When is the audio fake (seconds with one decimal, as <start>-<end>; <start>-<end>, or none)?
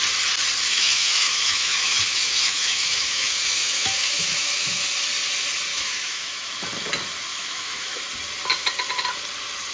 0.7-4.8; 5.7-6.5; 7.3-8.0